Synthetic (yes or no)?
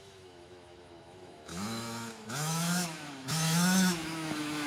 yes